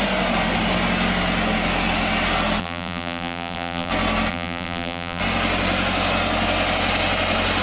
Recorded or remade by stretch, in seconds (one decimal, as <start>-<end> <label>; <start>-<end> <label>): 0.0-2.6 recorded; 2.6-3.9 remade; 3.9-4.3 recorded; 4.3-5.2 remade; 5.2-7.6 recorded